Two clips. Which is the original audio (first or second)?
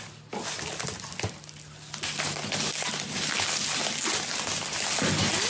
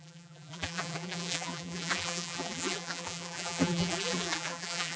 first